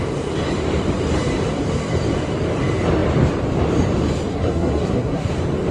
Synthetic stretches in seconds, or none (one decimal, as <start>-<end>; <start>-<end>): 4.3-5.3